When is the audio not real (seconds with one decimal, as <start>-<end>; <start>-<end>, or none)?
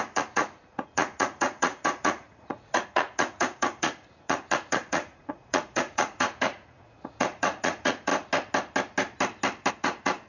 0.0-8.1; 9.7-10.3